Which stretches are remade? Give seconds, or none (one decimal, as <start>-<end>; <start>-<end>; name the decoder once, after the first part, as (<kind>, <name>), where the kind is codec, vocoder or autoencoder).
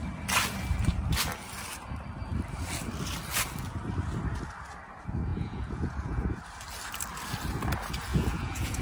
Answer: 5.3-6.4 (vocoder, Vocos); 8.1-8.8